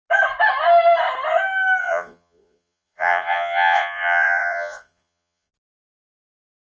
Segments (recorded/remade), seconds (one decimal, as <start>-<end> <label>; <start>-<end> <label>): 0.0-1.8 recorded; 1.8-5.5 remade; 5.5-6.8 recorded